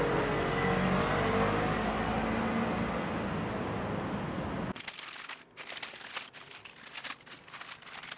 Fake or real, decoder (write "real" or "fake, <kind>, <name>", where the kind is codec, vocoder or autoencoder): real